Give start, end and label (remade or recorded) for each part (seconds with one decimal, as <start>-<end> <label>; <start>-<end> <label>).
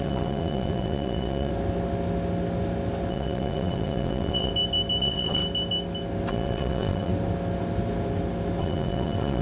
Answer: 0.0-1.5 remade; 1.5-3.1 recorded; 3.1-4.5 remade; 4.5-5.0 recorded; 5.0-5.4 remade; 5.4-6.3 recorded; 6.3-7.1 remade; 7.1-8.6 recorded; 8.6-9.4 remade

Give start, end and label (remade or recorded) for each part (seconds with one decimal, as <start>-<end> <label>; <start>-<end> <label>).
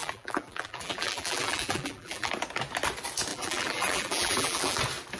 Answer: 0.0-2.3 remade; 2.3-3.3 recorded; 3.3-4.8 remade; 4.8-5.2 recorded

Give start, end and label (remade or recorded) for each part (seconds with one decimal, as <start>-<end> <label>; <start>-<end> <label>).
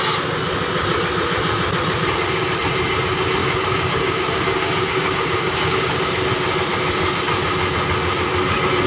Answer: 0.0-3.4 recorded; 3.4-6.1 remade; 6.1-8.9 recorded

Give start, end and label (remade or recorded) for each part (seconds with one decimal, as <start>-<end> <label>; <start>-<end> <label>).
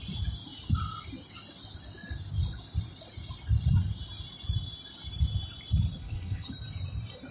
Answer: 0.0-6.0 recorded; 6.0-6.5 remade; 6.5-7.3 recorded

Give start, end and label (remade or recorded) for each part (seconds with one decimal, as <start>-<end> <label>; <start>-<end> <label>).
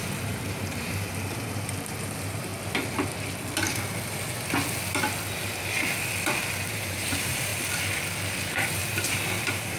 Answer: 0.0-2.5 remade; 2.5-6.7 recorded; 6.7-7.5 remade; 7.5-8.4 recorded; 8.4-8.8 remade; 8.8-9.4 recorded; 9.4-9.8 remade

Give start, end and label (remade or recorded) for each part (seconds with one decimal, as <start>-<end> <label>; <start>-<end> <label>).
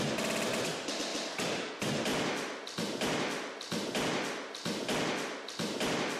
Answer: 0.0-6.2 recorded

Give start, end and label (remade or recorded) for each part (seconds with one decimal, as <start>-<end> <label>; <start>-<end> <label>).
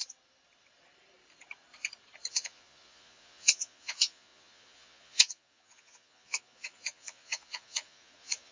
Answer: 0.0-2.3 recorded; 2.3-8.5 remade